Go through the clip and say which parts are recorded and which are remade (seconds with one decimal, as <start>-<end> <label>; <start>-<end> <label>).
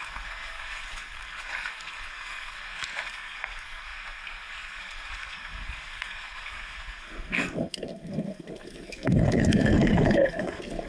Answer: 0.0-10.9 remade